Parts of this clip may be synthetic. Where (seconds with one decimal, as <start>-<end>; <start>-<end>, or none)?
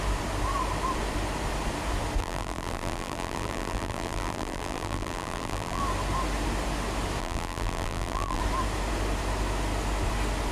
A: 2.2-5.8; 7.2-8.4